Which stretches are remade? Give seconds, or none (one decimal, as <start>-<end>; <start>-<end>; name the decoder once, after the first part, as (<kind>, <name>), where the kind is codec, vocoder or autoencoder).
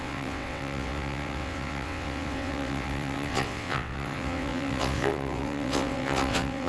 0.0-6.7 (vocoder, WaveNeXt)